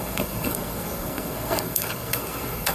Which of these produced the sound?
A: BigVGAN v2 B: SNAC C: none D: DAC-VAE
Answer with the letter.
B